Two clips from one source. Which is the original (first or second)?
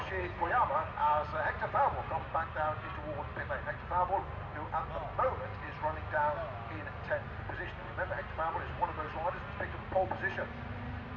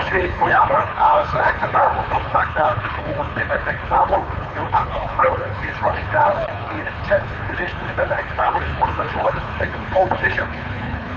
first